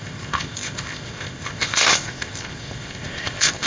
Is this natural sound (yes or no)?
no